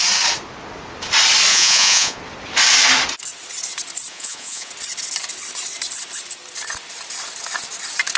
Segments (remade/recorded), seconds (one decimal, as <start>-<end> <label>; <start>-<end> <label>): 0.0-1.5 recorded; 1.5-2.2 remade; 2.2-4.1 recorded; 4.1-4.7 remade; 4.7-8.2 recorded